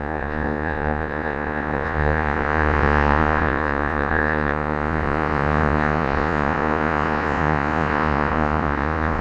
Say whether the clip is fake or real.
fake